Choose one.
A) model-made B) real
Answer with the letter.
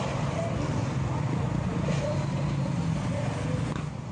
B